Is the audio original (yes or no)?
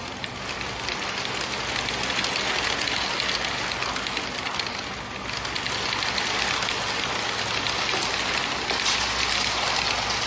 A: yes